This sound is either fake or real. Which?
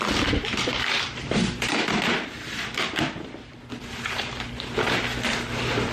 real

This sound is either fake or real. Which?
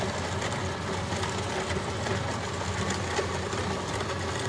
real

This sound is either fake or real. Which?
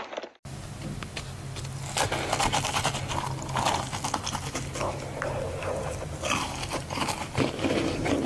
real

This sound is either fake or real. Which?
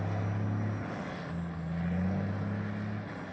real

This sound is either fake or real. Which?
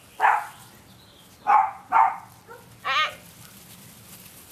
real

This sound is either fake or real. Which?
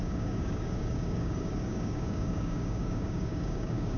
fake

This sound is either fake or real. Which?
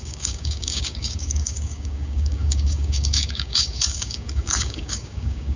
fake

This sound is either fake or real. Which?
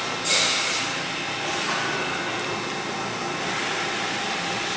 real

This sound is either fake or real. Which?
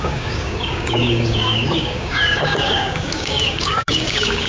fake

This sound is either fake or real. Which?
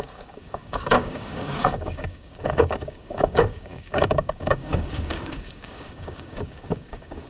fake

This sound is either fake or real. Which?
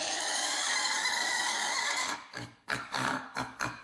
fake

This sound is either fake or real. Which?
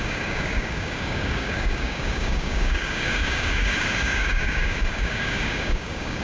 fake